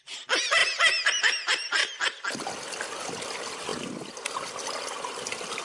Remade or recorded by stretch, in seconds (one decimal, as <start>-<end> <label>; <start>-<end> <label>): 0.0-0.6 remade; 0.6-1.2 recorded; 1.2-1.8 remade; 1.8-2.8 recorded; 2.8-5.6 remade